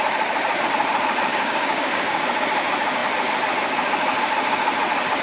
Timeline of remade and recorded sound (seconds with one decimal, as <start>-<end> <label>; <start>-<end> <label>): 0.0-1.3 recorded; 1.3-2.3 remade; 2.3-5.2 recorded

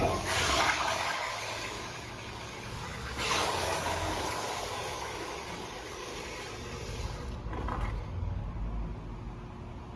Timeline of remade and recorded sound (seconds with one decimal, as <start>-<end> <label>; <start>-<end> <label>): 0.0-6.1 remade; 6.1-7.9 recorded; 7.9-8.4 remade; 8.4-10.0 recorded

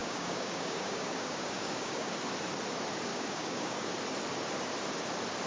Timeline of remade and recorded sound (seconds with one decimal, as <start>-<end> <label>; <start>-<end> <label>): 0.0-2.1 remade; 2.1-3.1 recorded; 3.1-3.9 remade; 3.9-5.5 recorded

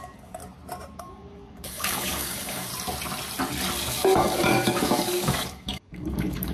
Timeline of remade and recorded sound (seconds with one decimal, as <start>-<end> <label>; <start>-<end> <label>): 0.0-0.4 remade; 0.4-1.0 recorded; 1.0-2.7 remade; 2.7-3.8 recorded; 3.8-6.5 remade

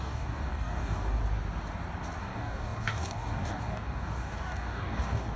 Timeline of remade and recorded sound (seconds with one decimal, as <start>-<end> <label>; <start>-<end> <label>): 0.0-1.2 remade; 1.2-2.2 recorded; 2.2-5.4 remade

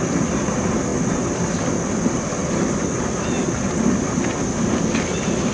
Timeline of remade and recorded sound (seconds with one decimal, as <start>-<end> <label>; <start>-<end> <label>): 0.0-5.5 recorded

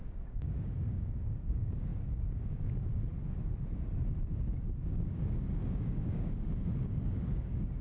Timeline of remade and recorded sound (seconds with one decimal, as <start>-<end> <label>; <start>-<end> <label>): 0.0-3.1 remade; 3.1-4.5 recorded; 4.5-7.8 remade

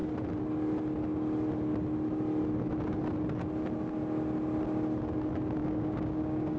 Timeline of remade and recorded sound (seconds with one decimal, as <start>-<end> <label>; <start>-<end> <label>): 0.0-5.6 recorded; 5.6-6.6 remade